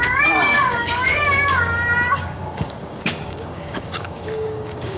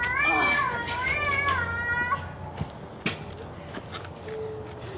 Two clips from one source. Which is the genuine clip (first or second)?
second